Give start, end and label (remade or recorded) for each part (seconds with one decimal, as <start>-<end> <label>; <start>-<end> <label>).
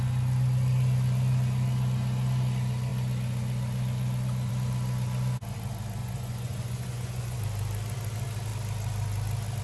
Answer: 0.0-6.0 recorded; 6.0-7.4 remade; 7.4-9.6 recorded